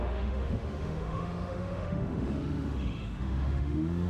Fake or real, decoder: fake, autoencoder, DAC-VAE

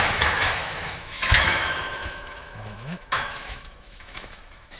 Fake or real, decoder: fake, autoencoder, DAC-VAE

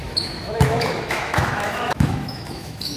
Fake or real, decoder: fake, autoencoder, DAC-VAE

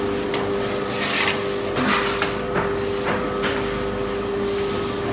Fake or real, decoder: real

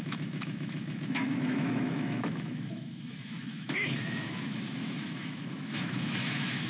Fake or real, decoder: fake, autoencoder, DAC-VAE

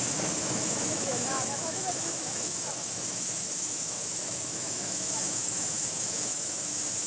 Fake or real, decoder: fake, autoencoder, DAC-VAE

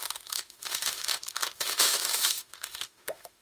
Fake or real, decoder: fake, autoencoder, DAC-VAE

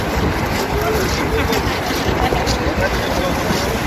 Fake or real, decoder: real